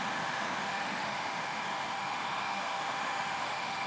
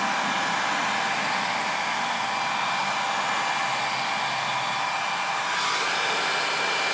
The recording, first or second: second